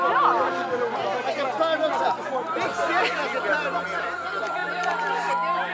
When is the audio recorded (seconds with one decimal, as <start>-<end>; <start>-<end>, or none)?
0.0-5.7